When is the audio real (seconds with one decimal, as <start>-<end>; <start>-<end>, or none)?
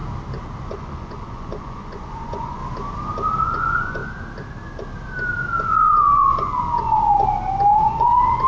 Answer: 0.0-0.7; 2.6-3.4; 4.0-5.6; 7.0-7.7